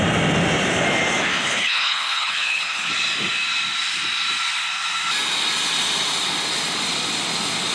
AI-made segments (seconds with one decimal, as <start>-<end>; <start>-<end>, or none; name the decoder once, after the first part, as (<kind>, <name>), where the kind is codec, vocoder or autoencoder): 1.3-2.9 (codec, HILCodec)